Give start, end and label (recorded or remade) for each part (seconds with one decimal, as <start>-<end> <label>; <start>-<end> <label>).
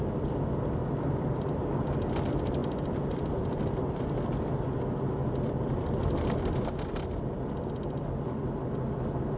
0.0-2.6 recorded; 2.6-4.0 remade; 4.0-9.4 recorded